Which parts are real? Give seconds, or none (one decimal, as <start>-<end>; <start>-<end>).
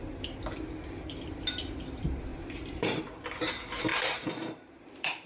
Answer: 0.0-2.3; 3.5-3.9; 4.8-5.3